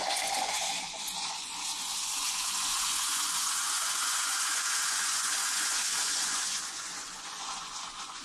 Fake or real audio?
fake